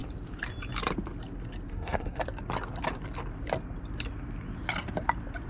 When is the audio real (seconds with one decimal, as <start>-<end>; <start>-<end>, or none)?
0.0-1.7; 2.2-5.5